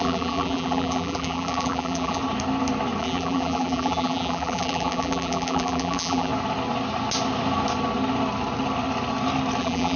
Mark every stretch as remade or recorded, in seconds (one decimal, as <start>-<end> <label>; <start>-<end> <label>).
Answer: 0.0-2.2 remade; 2.2-3.0 recorded; 3.0-6.3 remade; 6.3-9.6 recorded; 9.6-10.0 remade